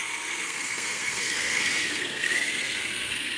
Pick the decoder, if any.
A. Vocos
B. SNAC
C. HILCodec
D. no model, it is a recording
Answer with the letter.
B